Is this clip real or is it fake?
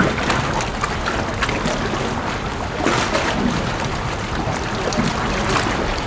real